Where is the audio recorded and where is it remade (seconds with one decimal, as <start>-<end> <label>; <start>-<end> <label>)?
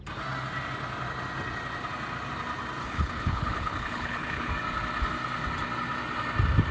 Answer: 0.0-2.8 recorded; 2.8-4.5 remade; 4.5-6.7 recorded